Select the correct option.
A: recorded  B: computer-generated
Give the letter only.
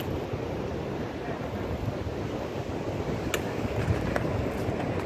A